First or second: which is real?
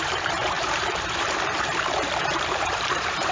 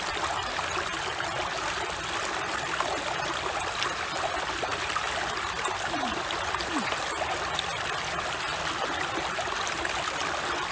second